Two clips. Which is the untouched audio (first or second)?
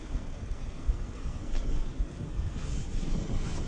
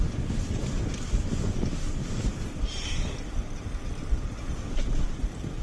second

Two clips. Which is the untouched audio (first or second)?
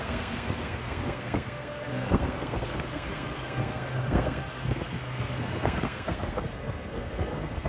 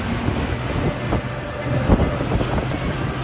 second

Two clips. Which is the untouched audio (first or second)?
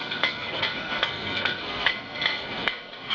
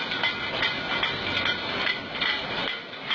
second